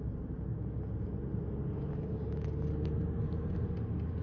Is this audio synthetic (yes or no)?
no